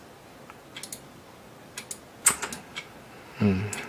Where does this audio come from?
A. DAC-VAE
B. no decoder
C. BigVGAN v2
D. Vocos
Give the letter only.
B